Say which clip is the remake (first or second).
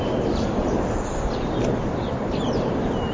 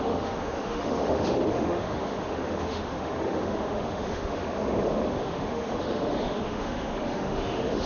second